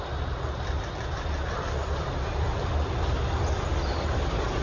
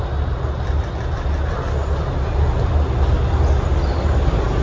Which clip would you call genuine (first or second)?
second